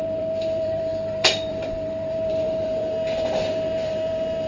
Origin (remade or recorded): remade